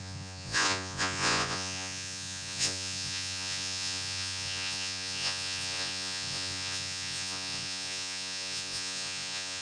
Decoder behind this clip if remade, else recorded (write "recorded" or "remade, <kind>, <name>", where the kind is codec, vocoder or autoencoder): remade, vocoder, Vocos